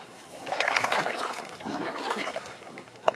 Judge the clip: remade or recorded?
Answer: remade